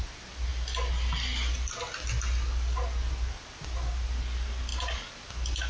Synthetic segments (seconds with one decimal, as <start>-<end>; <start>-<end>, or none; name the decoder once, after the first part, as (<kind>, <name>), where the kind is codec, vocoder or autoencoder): none